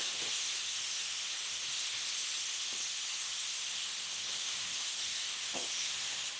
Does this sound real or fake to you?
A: fake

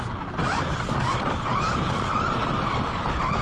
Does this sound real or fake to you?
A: real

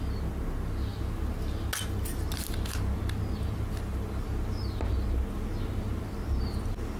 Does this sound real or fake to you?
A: real